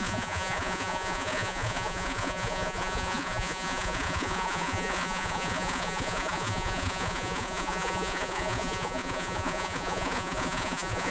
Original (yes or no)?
no